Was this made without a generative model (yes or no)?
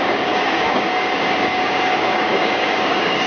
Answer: no